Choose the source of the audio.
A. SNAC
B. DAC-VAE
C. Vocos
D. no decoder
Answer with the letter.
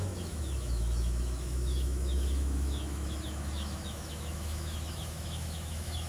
B